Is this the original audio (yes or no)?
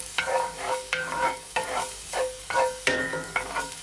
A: no